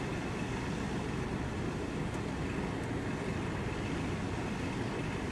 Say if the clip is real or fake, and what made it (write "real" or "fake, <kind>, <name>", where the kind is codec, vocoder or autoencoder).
real